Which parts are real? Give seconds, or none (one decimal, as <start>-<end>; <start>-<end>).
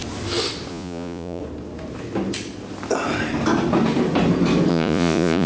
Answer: 0.0-0.7; 1.4-4.7